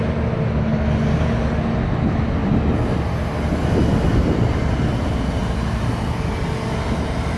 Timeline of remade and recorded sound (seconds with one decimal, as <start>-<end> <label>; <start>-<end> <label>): 0.0-7.4 recorded